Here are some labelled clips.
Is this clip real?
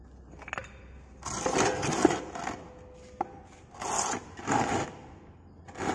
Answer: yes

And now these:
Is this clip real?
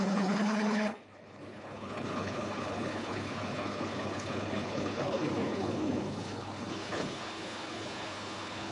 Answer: no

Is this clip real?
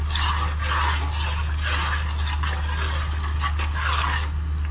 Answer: yes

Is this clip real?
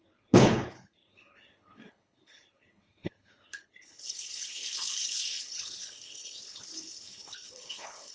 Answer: no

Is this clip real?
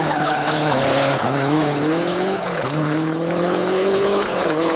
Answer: no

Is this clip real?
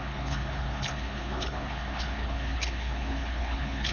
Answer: no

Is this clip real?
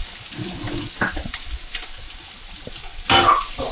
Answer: yes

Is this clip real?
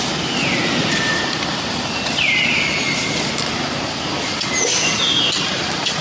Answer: yes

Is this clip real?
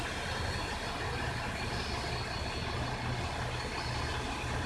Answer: yes